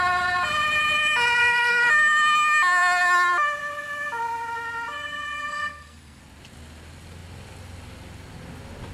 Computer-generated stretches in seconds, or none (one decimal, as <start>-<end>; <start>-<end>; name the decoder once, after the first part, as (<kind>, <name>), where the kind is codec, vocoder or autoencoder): 1.4-1.9 (codec, SNAC); 5.5-6.2